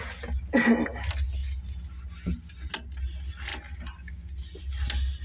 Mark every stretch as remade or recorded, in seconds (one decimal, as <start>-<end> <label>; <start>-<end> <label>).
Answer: 0.0-5.2 recorded